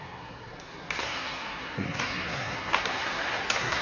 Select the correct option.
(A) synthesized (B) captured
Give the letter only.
A